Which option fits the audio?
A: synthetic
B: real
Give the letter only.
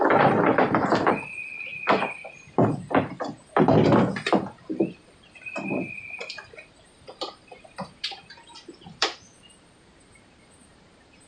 A